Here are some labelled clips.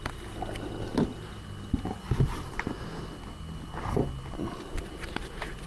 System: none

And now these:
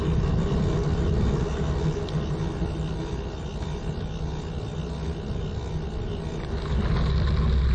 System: none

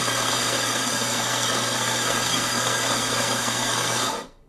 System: codec, SNAC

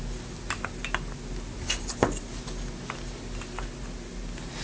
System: none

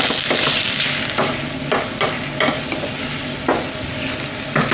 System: none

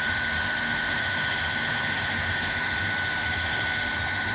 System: autoencoder, DAC-VAE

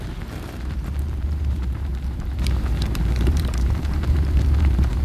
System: vocoder, BigVGAN v2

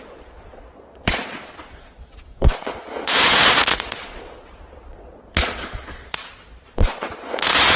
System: vocoder, Vocos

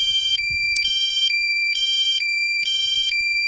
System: vocoder, Vocos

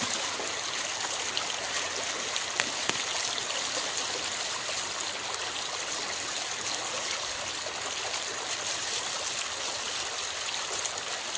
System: none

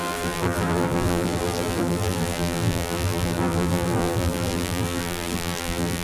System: vocoder, BigVGAN v2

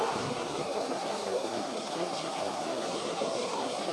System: codec, SNAC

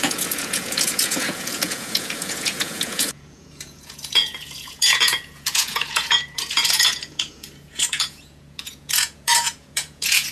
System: vocoder, Vocos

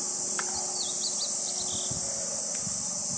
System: none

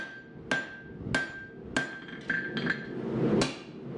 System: none